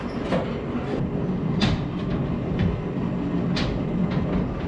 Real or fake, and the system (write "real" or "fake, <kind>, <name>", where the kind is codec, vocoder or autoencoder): real